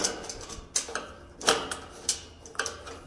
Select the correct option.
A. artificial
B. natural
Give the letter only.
B